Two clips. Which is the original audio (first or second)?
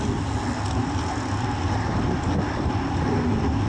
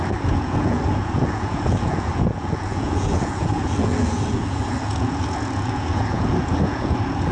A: first